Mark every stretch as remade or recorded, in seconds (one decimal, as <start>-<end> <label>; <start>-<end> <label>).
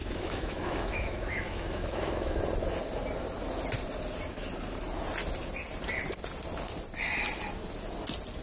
0.0-2.4 remade; 2.4-8.4 recorded